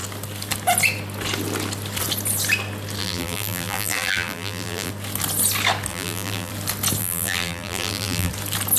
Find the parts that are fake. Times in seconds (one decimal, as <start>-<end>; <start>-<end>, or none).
3.0-4.9; 5.9-6.5; 7.0-8.3

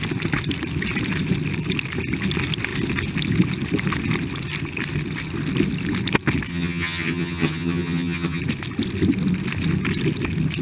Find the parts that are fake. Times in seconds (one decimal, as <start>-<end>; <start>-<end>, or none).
6.5-8.4